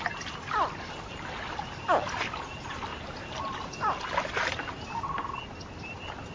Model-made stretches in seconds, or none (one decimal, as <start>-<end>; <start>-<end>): 2.9-3.9